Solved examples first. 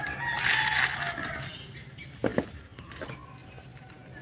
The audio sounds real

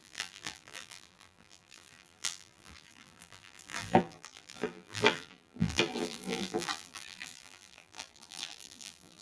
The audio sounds fake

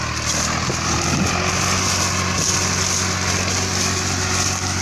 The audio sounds real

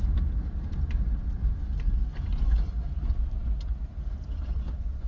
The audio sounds fake